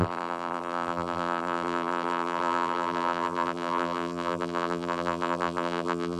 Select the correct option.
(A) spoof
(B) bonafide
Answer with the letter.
A